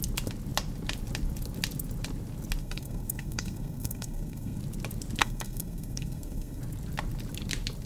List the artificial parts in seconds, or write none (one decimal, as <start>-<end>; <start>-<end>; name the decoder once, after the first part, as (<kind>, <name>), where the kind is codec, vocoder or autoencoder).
2.6-4.6 (codec, SNAC); 5.2-6.6